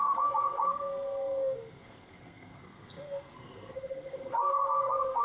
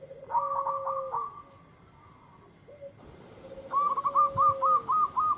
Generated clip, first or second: first